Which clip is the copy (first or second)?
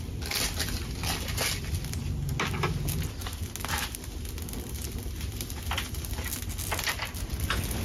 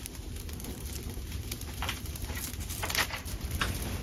second